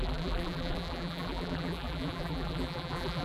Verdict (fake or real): fake